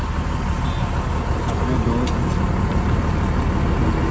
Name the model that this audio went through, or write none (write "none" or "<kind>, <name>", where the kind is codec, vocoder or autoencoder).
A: none